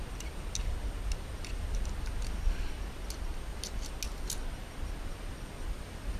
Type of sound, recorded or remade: recorded